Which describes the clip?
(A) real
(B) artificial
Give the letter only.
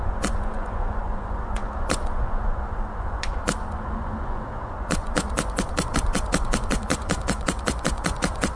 B